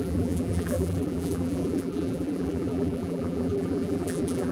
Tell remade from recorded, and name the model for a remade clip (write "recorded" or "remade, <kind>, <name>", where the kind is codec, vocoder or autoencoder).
remade, vocoder, BigVGAN v2